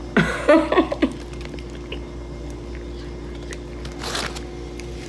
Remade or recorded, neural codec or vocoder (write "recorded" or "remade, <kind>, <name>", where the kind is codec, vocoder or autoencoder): recorded